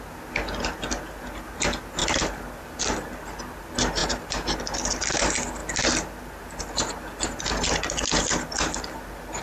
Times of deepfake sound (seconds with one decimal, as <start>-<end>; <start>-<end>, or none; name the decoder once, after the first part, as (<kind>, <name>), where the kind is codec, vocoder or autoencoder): 2.0-2.8 (vocoder, BigVGAN v2); 4.0-4.6